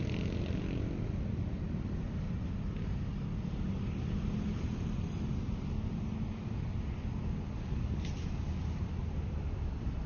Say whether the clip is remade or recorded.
recorded